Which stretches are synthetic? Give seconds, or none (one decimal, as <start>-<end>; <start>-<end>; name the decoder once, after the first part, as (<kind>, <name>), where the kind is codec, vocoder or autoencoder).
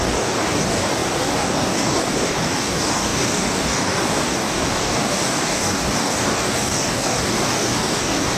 0.0-8.4 (codec, DAC)